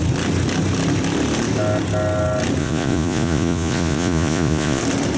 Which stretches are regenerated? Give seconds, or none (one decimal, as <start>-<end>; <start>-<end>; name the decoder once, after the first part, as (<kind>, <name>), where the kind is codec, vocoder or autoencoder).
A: 2.6-4.8 (vocoder, Vocos)